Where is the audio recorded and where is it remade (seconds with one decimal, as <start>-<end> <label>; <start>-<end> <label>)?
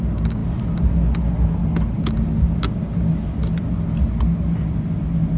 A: 0.0-5.4 recorded